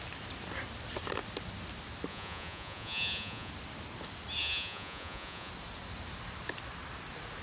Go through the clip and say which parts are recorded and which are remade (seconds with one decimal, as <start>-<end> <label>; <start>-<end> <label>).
0.0-2.1 recorded; 2.1-3.5 remade; 3.5-4.4 recorded; 4.4-5.5 remade; 5.5-7.4 recorded